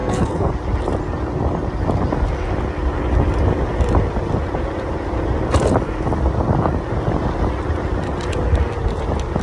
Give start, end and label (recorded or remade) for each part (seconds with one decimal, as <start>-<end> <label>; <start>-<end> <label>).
0.0-0.5 remade; 0.5-9.4 recorded

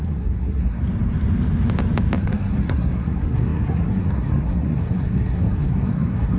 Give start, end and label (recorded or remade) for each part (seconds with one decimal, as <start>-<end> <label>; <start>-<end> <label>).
0.0-0.8 remade; 0.8-2.2 recorded; 2.2-6.4 remade

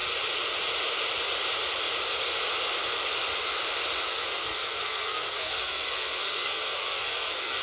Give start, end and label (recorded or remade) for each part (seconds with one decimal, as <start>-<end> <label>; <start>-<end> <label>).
0.0-4.1 recorded; 4.1-7.6 remade

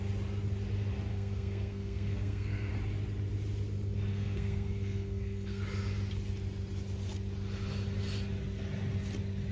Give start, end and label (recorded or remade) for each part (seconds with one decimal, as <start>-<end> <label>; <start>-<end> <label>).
0.0-1.1 recorded; 1.1-2.7 remade; 2.7-4.1 recorded; 4.1-5.6 remade; 5.6-9.5 recorded

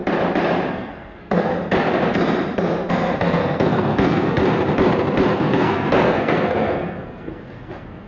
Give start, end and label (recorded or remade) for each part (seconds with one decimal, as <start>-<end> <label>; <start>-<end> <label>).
0.0-0.7 recorded; 0.7-1.5 remade; 1.5-2.9 recorded; 2.9-4.4 remade; 4.4-5.3 recorded; 5.3-8.1 remade